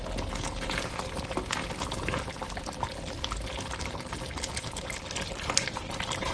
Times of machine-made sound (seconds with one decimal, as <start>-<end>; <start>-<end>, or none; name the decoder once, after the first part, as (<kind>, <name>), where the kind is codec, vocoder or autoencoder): none